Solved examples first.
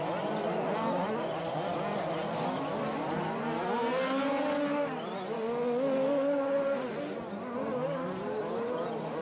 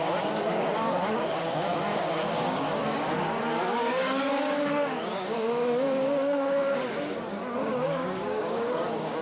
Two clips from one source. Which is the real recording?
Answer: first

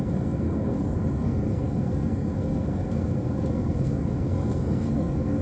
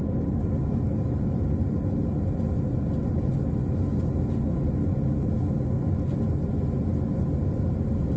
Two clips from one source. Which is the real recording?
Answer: second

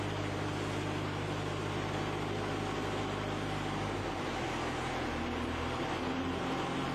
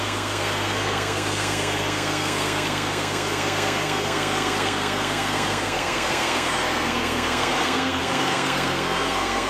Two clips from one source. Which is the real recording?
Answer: first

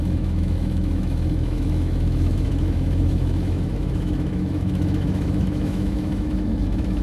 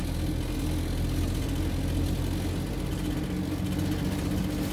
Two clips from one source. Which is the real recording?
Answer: second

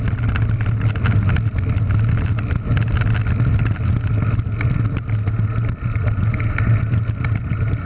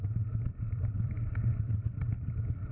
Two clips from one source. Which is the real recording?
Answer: first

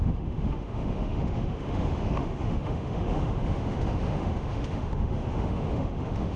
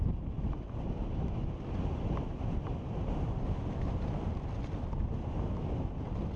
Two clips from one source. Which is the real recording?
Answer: second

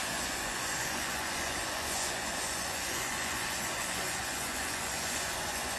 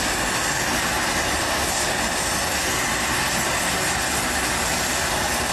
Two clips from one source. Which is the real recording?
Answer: second